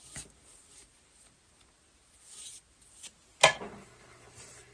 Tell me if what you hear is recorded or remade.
recorded